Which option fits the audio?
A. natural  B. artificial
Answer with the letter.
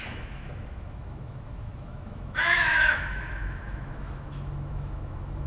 B